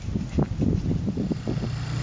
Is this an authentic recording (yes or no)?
yes